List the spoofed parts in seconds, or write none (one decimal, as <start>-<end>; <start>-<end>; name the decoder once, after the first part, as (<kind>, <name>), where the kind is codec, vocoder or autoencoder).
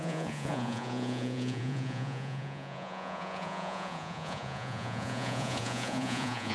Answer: 0.0-6.5 (vocoder, Vocos)